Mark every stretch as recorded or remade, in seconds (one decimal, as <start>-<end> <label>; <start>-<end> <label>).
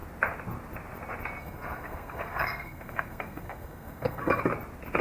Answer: 0.0-1.4 recorded; 1.4-4.4 remade; 4.4-5.0 recorded